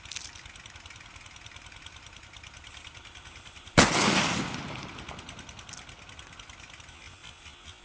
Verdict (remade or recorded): recorded